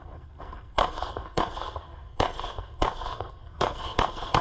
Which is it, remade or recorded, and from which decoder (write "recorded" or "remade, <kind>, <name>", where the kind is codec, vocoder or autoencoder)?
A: remade, codec, SNAC